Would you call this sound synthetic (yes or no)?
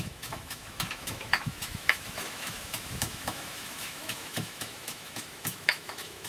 yes